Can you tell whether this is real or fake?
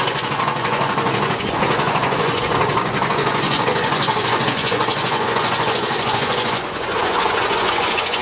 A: fake